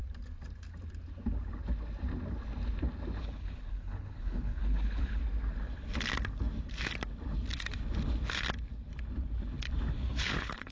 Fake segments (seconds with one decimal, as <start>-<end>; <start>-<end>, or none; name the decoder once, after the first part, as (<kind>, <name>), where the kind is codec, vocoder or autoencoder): 3.2-5.2 (codec, HILCodec); 9.9-10.7